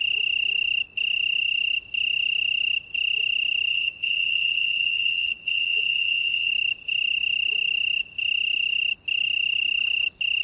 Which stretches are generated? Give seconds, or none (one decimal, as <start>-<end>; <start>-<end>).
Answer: 3.7-6.5